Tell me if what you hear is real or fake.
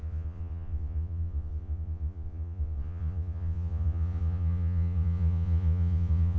fake